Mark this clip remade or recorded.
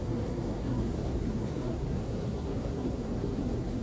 remade